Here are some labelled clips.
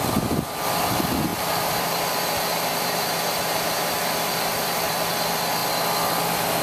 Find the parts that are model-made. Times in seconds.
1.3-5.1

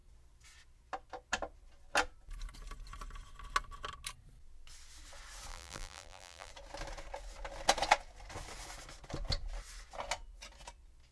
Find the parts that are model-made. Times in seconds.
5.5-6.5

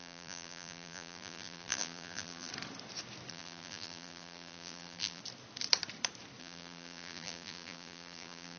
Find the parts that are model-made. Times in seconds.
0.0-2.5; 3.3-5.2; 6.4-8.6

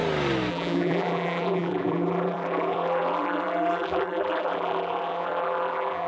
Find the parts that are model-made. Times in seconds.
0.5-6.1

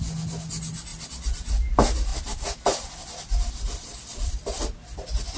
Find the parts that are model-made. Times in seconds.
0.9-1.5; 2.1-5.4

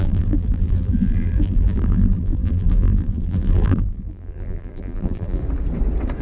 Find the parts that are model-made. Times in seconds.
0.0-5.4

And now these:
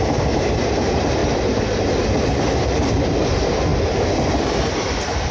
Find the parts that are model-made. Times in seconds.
0.0-1.2; 2.2-3.7; 4.4-5.3

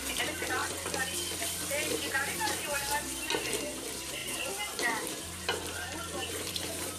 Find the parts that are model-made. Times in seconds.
0.0-0.6; 1.9-7.0